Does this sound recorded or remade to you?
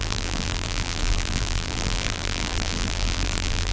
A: remade